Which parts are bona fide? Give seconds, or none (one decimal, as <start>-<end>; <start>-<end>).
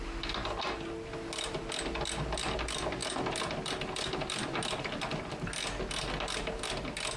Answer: 0.0-7.2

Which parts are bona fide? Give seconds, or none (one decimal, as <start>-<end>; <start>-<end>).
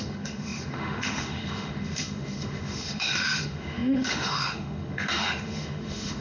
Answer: none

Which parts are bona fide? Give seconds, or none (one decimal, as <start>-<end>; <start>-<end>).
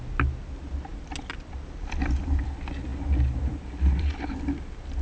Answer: 0.0-5.0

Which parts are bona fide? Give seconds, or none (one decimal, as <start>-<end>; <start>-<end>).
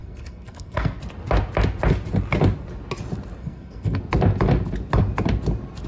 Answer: 1.0-3.4; 4.0-5.9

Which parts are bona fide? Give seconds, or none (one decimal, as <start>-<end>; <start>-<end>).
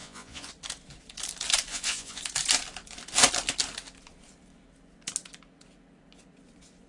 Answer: 0.5-1.7; 2.2-6.9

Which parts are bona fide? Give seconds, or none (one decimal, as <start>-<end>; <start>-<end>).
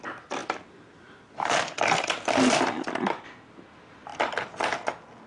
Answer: 0.0-0.4; 2.3-5.3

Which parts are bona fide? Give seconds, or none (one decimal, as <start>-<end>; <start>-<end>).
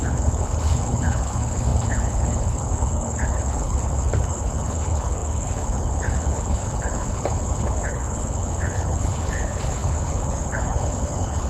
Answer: none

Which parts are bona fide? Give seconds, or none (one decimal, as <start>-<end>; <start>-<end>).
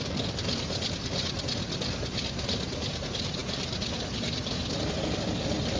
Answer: 0.0-5.8